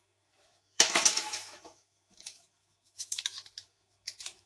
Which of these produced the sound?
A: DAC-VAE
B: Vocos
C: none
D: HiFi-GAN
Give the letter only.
A